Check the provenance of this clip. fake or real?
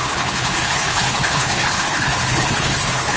fake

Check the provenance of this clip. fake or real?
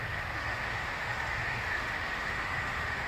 fake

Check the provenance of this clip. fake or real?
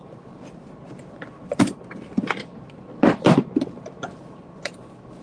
real